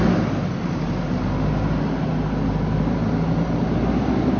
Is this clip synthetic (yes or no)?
no